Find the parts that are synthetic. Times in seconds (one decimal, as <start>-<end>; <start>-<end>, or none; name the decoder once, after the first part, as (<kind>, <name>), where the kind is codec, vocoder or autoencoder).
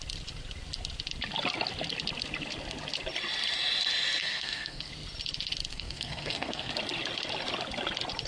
4.2-4.9 (codec, SNAC); 5.7-6.7